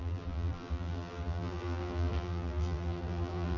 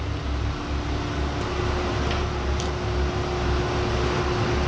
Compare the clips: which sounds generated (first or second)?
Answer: first